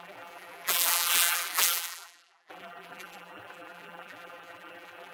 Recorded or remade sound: remade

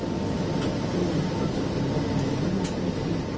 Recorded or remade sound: recorded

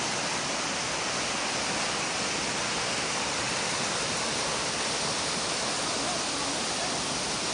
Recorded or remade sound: remade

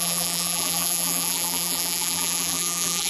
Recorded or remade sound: remade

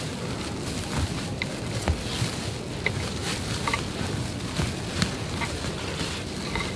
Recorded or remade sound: recorded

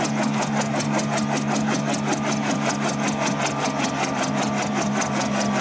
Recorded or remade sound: recorded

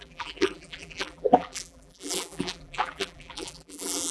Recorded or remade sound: remade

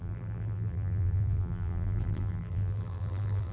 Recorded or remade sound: remade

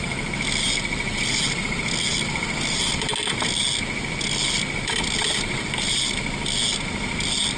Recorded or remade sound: recorded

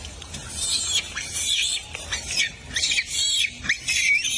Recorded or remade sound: remade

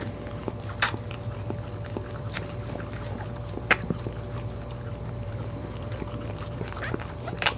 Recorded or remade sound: remade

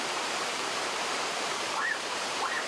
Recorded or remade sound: remade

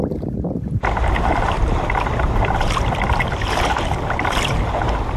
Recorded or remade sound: remade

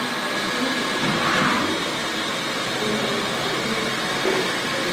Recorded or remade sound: recorded